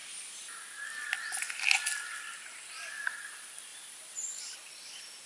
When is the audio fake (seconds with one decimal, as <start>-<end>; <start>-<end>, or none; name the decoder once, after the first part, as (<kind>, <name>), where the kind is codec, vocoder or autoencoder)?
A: none